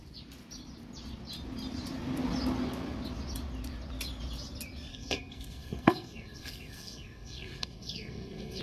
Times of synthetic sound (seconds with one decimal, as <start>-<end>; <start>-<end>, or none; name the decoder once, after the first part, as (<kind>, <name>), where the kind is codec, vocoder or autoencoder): 4.9-8.6 (codec, SNAC)